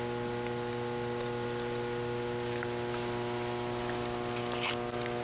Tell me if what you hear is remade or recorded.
recorded